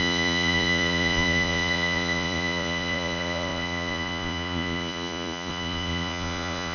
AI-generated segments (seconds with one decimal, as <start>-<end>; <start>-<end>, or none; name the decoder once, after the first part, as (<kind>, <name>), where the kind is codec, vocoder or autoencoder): 0.0-6.7 (vocoder, Vocos)

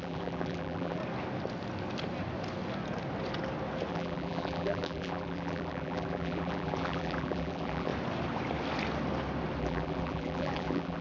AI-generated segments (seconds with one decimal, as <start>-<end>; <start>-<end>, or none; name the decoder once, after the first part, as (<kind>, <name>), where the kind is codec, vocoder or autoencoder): 0.0-1.0 (vocoder, BigVGAN v2); 3.9-7.9; 9.6-11.0